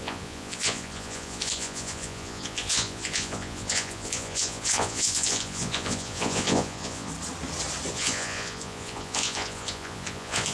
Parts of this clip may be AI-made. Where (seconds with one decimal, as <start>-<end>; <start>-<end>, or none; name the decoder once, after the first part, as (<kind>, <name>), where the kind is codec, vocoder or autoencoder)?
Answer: 0.0-7.1 (vocoder, Vocos); 7.9-10.5